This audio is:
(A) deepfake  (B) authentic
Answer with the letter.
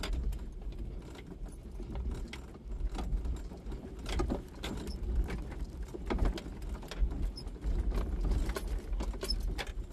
B